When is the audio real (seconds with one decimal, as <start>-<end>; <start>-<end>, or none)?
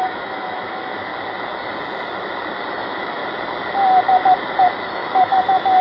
1.1-2.7; 3.2-4.9